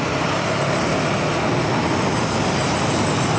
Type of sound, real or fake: real